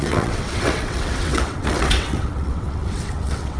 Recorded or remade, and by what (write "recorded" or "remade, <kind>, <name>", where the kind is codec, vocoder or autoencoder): remade, vocoder, WaveNeXt